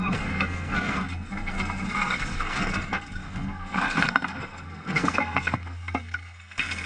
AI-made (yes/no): yes